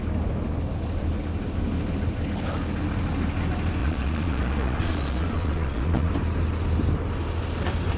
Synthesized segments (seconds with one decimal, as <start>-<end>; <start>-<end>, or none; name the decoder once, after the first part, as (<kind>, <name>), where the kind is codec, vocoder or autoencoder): 3.8-6.1 (vocoder, Vocos)